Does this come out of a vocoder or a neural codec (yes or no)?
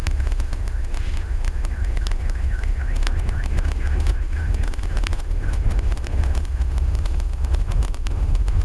yes